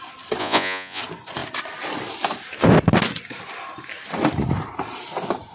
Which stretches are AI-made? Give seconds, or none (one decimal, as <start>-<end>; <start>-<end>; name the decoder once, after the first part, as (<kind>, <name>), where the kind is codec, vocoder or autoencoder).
0.4-1.0 (vocoder, Vocos)